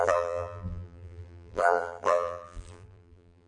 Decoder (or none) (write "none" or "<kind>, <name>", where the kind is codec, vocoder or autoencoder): vocoder, BigVGAN v2